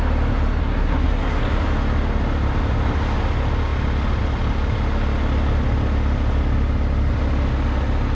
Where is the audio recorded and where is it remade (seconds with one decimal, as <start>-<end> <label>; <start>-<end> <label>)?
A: 0.0-0.6 recorded; 0.6-1.4 remade; 1.4-8.1 recorded